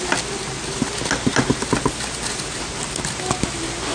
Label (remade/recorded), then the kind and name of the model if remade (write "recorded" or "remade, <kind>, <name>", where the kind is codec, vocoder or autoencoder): recorded